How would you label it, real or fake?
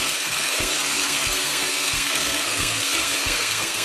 fake